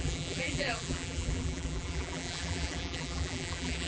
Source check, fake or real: fake